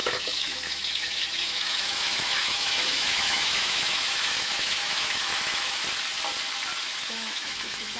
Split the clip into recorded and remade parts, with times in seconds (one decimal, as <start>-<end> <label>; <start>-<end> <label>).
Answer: 0.0-5.8 remade; 5.8-7.0 recorded; 7.0-8.0 remade